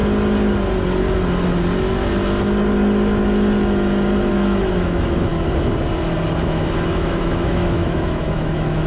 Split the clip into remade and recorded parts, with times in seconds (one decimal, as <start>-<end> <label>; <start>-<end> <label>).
0.0-4.3 recorded; 4.3-5.3 remade; 5.3-6.4 recorded; 6.4-8.9 remade